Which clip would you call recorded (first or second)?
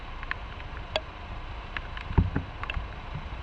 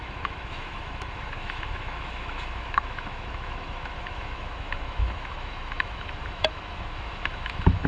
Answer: first